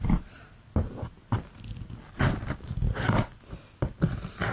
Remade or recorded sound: recorded